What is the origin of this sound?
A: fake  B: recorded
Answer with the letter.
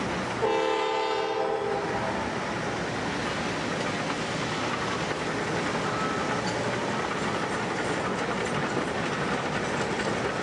B